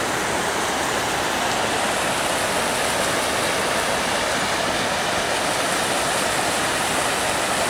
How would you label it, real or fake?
real